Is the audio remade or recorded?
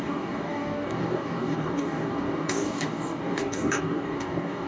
remade